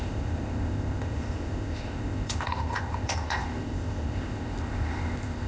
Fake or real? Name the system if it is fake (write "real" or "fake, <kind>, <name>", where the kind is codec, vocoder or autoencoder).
fake, codec, ZipCodec